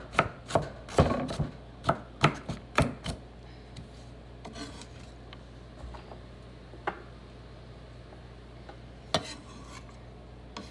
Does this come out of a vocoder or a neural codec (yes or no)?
no